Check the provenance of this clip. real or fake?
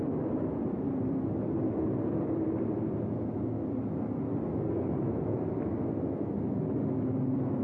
real